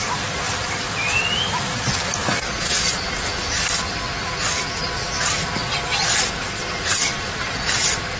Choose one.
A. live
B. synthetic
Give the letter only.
A